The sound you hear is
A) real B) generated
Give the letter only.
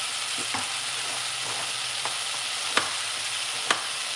A